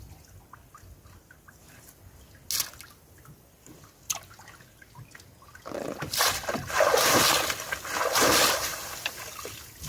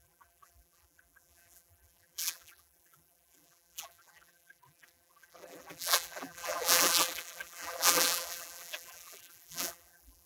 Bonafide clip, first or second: first